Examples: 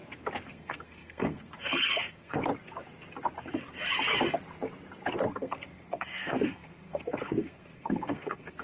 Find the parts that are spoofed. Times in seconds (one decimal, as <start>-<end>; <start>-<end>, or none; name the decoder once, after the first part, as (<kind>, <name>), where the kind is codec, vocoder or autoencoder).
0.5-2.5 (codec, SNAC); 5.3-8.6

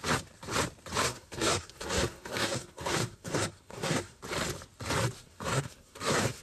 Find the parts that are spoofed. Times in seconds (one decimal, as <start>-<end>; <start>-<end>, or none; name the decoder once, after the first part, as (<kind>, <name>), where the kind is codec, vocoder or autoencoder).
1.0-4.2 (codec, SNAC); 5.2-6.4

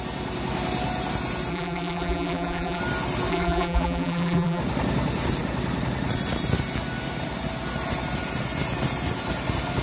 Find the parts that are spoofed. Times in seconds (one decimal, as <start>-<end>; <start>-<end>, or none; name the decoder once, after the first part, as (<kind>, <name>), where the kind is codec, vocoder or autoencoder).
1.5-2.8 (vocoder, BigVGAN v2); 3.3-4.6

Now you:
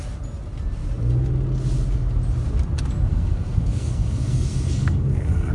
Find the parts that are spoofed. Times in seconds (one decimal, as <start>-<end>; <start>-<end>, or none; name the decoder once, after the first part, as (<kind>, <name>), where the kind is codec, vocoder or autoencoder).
3.1-5.5 (codec, SNAC)

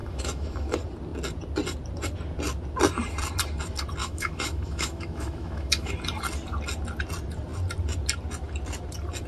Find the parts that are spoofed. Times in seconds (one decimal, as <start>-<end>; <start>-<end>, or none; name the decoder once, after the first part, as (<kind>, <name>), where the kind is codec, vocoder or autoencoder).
0.0-0.7 (autoencoder, DAC-VAE); 4.0-5.9